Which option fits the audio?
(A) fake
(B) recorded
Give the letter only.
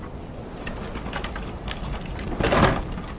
B